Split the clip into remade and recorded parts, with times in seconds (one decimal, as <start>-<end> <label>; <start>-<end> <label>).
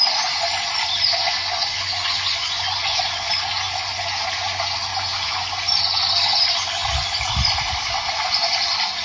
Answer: 0.0-1.2 recorded; 1.2-3.3 remade; 3.3-4.9 recorded; 4.9-5.8 remade; 5.8-9.0 recorded